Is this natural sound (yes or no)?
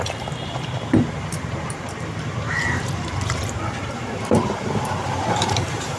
no